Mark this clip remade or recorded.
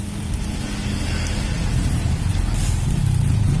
recorded